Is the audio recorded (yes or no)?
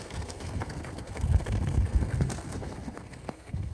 no